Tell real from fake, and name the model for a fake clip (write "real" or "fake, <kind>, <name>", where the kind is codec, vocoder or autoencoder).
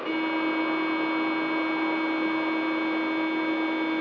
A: real